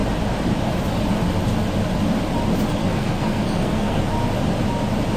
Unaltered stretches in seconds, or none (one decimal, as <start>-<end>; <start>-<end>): 0.0-2.8; 4.1-5.2